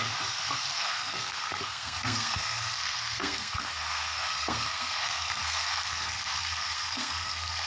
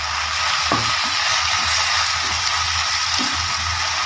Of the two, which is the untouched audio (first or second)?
second